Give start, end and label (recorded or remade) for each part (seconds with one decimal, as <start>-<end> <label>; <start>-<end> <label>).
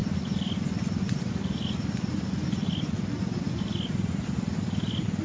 0.0-5.2 recorded